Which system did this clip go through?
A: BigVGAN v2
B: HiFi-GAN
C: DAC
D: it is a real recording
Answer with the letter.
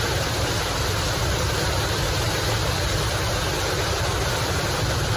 D